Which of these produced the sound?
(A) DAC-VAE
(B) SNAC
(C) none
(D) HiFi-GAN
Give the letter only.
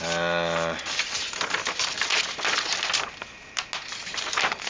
C